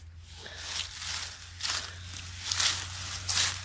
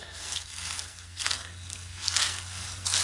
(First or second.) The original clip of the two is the first